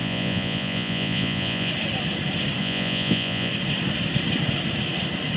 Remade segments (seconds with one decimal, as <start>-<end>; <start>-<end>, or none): 0.0-1.7; 2.6-3.5